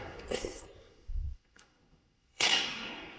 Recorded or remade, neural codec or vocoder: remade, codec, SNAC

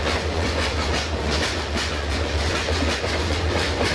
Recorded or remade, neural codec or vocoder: remade, vocoder, Vocos